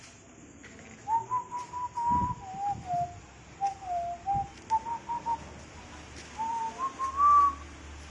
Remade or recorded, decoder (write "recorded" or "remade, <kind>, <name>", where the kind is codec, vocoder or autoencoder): recorded